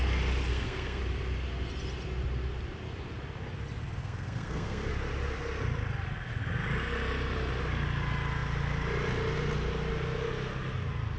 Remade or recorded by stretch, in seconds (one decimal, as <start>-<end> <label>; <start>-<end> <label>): 0.0-0.5 recorded; 0.5-1.0 remade; 1.0-4.0 recorded; 4.0-4.9 remade; 4.9-11.2 recorded